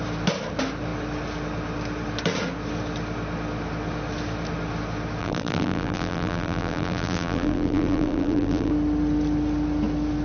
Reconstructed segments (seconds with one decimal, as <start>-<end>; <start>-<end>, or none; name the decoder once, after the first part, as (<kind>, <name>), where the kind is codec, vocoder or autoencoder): 5.2-8.7 (vocoder, BigVGAN v2)